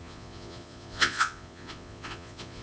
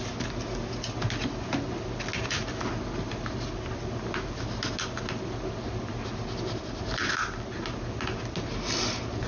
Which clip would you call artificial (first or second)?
first